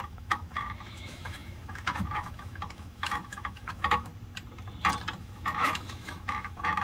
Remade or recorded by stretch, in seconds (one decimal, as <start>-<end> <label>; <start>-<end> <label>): 0.0-4.1 remade; 4.1-5.2 recorded; 5.2-6.8 remade